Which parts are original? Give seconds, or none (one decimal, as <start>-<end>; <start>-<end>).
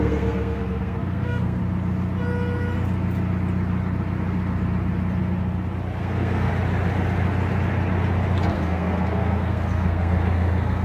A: 1.6-6.0; 6.5-8.5